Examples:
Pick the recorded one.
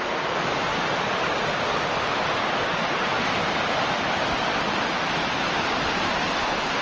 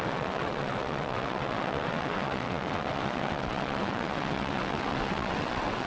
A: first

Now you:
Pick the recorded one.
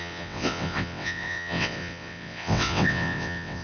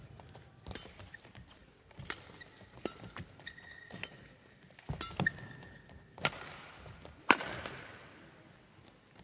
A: second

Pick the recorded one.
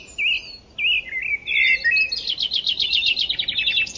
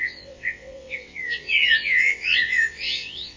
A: first